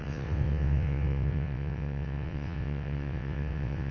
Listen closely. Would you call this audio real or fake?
fake